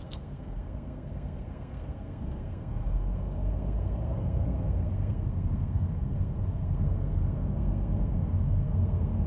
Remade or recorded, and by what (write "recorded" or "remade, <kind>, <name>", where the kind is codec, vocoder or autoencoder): remade, codec, SNAC